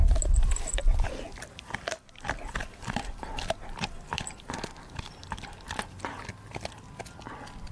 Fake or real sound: real